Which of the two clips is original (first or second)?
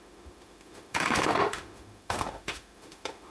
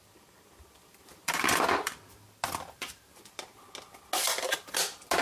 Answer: second